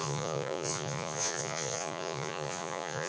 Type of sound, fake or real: fake